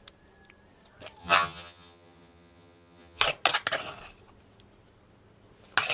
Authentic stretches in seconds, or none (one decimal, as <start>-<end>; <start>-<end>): 0.0-1.2; 3.2-5.9